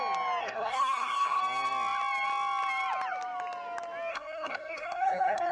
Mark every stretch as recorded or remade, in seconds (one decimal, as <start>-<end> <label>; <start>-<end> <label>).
0.0-0.4 recorded; 0.4-1.4 remade; 1.4-4.1 recorded; 4.1-5.5 remade